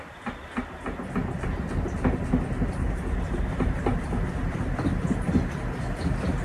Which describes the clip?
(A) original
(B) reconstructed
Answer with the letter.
A